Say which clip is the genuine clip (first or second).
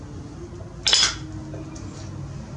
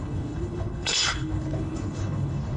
first